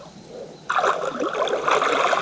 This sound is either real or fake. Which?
real